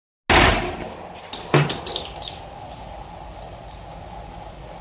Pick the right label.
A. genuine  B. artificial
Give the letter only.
A